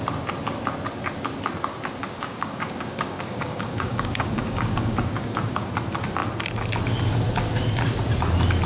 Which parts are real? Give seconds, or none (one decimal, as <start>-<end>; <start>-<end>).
0.0-2.0; 5.7-8.7